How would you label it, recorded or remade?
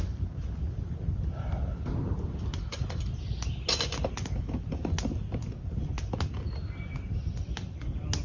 recorded